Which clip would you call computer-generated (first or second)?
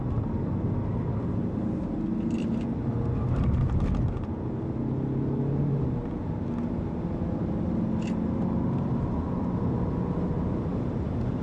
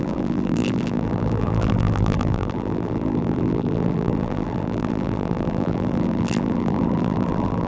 second